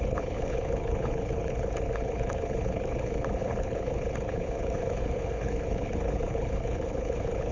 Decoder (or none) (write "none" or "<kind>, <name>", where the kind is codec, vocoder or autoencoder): codec, HILCodec